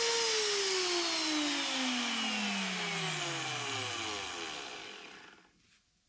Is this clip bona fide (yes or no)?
yes